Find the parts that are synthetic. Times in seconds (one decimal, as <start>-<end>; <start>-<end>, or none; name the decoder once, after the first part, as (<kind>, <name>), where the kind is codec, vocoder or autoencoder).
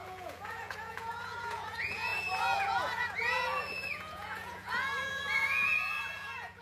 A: 0.0-6.6 (vocoder, Vocos)